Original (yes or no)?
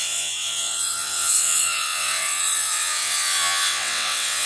no